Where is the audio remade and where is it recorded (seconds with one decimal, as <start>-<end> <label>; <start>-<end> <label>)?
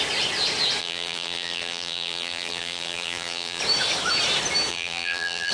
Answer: 0.0-0.8 recorded; 0.8-3.6 remade; 3.6-4.7 recorded; 4.7-5.5 remade